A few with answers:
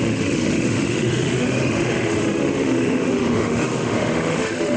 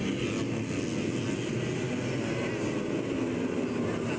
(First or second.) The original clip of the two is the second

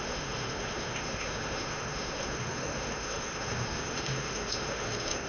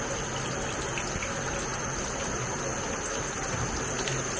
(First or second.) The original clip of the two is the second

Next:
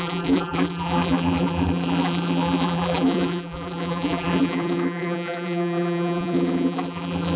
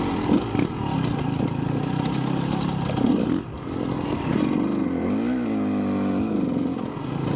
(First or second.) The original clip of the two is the second